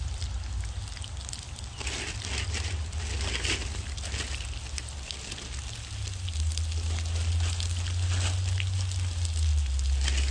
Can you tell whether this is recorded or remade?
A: recorded